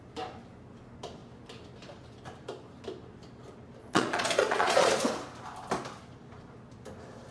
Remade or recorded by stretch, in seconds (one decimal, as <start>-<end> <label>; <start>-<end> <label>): 0.0-3.8 recorded; 3.8-5.0 remade; 5.0-7.3 recorded